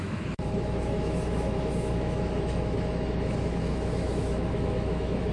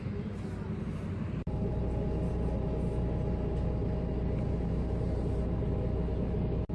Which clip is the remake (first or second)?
first